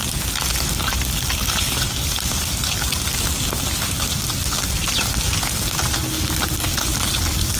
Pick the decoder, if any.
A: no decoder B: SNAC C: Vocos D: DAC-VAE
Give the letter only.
A